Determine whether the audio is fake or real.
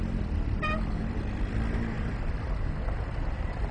real